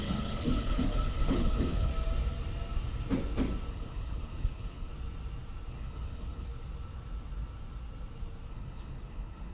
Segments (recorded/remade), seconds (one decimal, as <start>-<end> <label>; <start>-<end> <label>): 0.0-1.9 remade; 1.9-3.7 recorded; 3.7-4.9 remade; 4.9-5.7 recorded; 5.7-6.5 remade; 6.5-8.5 recorded; 8.5-9.5 remade